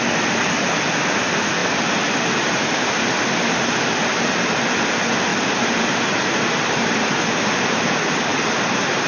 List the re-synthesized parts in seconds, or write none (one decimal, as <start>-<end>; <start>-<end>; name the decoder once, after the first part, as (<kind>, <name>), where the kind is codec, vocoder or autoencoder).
1.6-3.2 (vocoder, BigVGAN v2); 5.3-7.2; 8.3-9.1